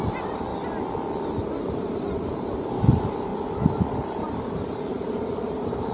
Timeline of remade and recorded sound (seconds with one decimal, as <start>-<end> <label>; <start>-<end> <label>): 0.0-0.5 remade; 0.5-1.6 recorded; 1.6-3.3 remade; 3.3-3.9 recorded; 3.9-5.9 remade